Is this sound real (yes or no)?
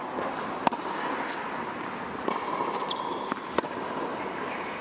yes